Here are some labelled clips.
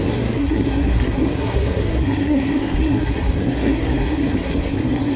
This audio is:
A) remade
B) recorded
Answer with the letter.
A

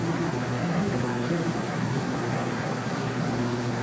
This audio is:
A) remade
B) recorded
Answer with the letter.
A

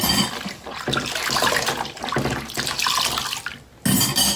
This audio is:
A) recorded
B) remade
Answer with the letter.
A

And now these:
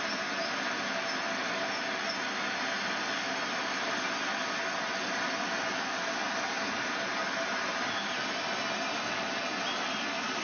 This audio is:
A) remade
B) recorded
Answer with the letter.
B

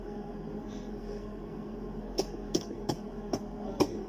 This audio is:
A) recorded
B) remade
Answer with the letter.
B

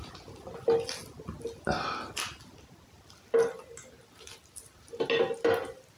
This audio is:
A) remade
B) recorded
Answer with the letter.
B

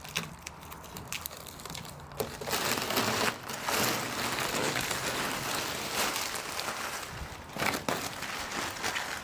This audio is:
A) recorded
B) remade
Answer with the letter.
A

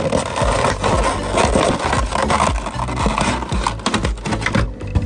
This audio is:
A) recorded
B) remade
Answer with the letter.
A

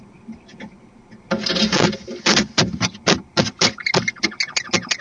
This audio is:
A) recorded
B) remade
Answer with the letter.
A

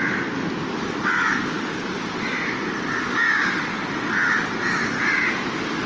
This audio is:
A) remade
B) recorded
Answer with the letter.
B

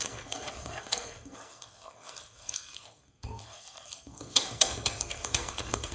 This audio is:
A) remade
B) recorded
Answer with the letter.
A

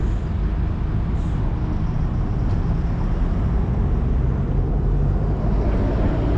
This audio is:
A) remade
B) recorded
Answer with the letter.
B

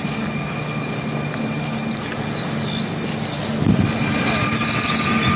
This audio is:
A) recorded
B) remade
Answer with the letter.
A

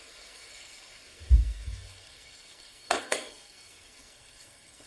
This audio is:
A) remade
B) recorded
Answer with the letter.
A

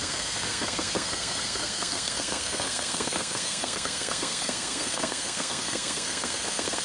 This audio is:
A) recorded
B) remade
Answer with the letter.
B